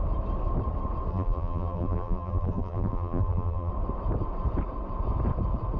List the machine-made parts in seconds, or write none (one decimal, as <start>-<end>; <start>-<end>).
1.1-3.7